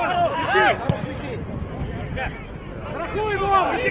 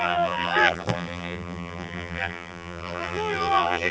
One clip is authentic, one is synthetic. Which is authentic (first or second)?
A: first